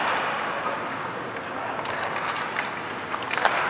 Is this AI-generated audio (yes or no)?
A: no